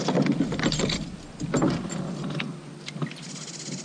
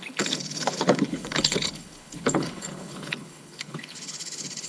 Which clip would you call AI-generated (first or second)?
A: second